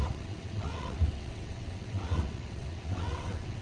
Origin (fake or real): fake